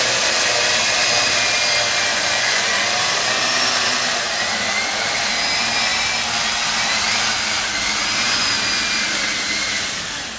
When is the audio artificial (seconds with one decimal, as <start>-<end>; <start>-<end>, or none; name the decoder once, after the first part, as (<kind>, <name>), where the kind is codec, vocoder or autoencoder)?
2.1-2.9 (vocoder, Vocos)